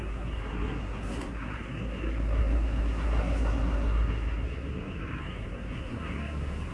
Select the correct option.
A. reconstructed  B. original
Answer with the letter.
A